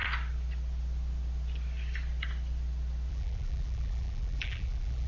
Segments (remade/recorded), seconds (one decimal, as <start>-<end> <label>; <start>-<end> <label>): 0.0-3.1 recorded; 3.1-5.1 remade